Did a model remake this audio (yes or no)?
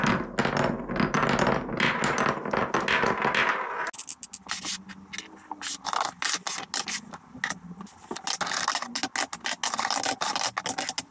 no